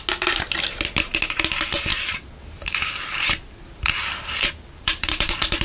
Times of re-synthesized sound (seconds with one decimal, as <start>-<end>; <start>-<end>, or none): 1.9-5.6